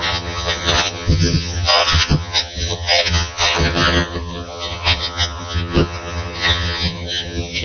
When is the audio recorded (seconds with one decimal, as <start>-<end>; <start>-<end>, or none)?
none